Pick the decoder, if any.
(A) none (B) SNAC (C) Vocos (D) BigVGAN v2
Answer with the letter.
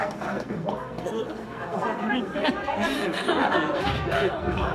B